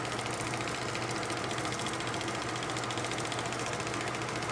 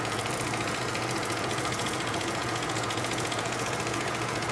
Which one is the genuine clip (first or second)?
first